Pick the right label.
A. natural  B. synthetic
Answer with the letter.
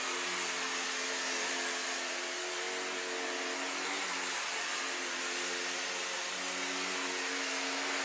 A